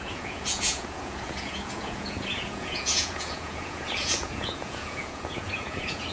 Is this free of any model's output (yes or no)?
no